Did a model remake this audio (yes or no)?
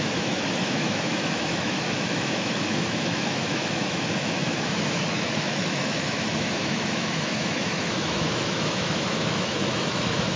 yes